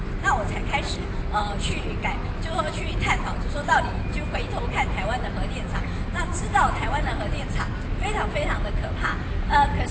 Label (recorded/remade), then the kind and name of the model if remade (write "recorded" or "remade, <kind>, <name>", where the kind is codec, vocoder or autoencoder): recorded